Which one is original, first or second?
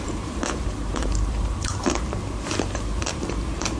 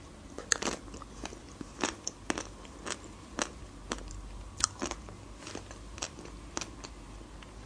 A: second